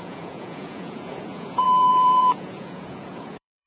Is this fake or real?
fake